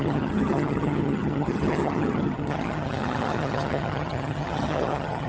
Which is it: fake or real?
fake